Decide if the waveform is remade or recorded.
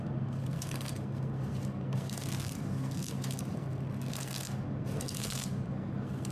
remade